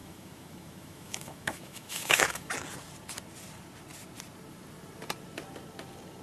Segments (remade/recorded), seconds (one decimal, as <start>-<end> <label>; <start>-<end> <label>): 0.0-2.5 remade; 2.5-6.2 recorded